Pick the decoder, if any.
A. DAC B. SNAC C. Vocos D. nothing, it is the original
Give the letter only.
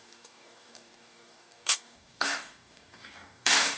A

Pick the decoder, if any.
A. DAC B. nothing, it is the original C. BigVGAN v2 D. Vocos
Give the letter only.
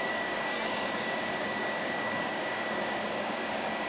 A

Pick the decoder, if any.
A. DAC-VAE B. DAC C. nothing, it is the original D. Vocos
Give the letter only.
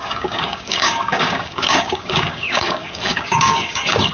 B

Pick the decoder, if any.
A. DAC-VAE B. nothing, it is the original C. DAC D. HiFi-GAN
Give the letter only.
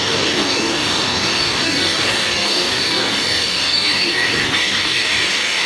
C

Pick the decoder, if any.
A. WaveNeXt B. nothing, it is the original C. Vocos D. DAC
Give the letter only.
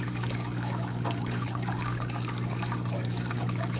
D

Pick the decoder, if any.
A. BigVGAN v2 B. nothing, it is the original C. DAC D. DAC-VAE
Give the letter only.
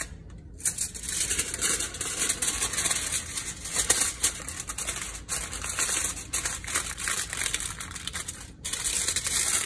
B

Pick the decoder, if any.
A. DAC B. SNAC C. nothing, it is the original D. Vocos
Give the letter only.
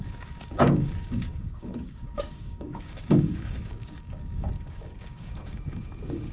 A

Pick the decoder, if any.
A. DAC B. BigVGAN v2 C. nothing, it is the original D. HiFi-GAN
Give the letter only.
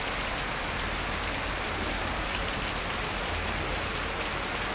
C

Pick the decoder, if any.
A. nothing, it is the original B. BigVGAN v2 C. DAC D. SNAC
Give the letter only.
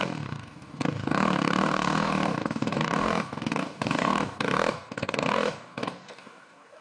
C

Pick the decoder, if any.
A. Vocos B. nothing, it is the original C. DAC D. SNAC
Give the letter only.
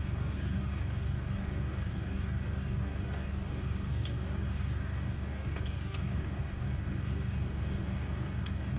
C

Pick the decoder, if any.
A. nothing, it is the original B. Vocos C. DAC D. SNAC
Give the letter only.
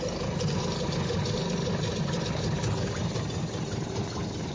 A